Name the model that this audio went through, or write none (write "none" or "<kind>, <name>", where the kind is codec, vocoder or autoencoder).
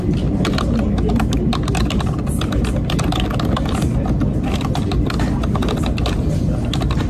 none